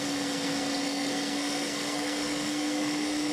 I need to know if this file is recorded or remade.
remade